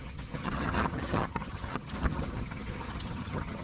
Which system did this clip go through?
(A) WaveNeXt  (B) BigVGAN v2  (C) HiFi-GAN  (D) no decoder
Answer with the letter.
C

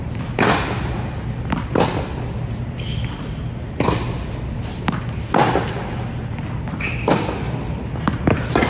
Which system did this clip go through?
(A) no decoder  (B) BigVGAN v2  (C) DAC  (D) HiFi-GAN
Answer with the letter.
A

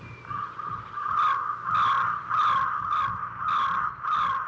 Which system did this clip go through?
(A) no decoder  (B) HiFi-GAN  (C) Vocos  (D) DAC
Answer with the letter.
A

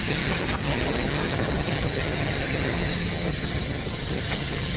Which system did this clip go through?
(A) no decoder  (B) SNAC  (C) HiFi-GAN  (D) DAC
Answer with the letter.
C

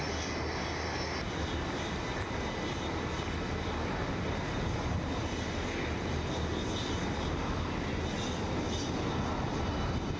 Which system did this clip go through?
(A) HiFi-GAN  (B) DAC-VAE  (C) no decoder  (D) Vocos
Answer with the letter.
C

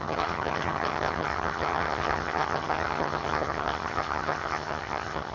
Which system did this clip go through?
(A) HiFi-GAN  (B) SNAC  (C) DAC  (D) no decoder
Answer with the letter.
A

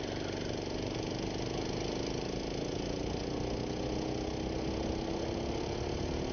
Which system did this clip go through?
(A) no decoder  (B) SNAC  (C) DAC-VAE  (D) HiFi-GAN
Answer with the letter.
A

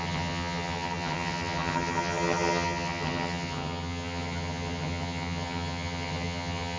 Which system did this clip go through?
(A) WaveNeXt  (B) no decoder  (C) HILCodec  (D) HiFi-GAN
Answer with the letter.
D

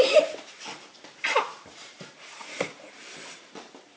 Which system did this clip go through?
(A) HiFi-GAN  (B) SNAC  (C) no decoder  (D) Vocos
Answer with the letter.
C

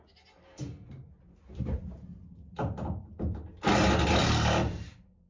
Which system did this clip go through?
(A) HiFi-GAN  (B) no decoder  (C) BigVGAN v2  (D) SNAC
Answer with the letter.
B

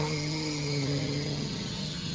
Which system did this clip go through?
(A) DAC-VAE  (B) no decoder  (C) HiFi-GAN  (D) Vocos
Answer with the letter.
C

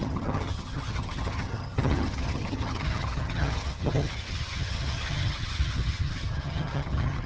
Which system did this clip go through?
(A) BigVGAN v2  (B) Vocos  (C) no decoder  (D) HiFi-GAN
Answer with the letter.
D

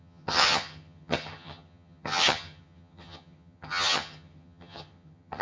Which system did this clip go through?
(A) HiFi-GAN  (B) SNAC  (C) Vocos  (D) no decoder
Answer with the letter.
A